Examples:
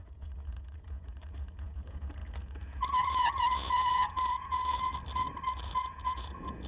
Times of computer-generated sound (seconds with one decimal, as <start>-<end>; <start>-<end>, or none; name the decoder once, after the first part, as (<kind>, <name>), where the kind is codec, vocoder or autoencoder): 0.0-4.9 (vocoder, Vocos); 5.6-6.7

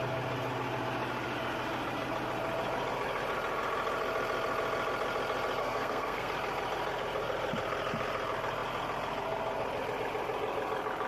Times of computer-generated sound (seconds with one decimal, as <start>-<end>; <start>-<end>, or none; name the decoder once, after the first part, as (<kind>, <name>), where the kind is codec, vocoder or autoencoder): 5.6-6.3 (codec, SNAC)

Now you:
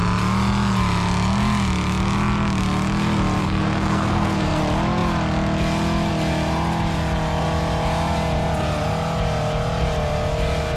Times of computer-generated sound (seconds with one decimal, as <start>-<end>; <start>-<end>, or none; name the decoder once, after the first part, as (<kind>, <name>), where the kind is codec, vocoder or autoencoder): 3.4-4.6 (codec, SNAC)